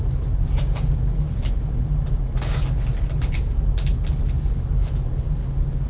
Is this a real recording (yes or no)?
yes